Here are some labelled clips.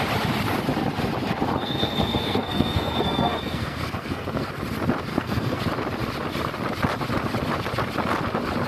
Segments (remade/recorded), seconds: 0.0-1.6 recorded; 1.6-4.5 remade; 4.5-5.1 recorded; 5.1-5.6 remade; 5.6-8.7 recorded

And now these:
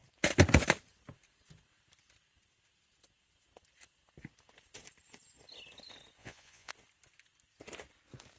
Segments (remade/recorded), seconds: 0.0-6.2 recorded; 6.2-6.7 remade; 6.7-8.4 recorded